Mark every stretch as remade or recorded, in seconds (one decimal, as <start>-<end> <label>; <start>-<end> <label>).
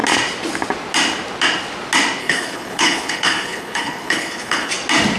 0.0-2.2 recorded; 2.2-4.7 remade; 4.7-5.2 recorded